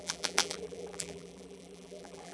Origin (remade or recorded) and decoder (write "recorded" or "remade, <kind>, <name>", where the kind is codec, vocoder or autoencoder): remade, vocoder, BigVGAN v2